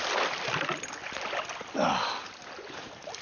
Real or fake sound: real